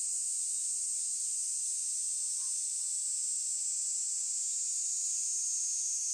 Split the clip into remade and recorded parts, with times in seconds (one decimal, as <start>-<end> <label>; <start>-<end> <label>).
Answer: 0.0-6.1 recorded